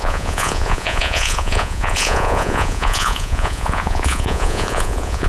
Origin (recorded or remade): remade